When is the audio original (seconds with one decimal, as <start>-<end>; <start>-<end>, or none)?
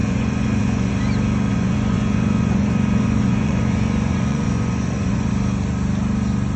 0.9-1.5; 5.3-6.6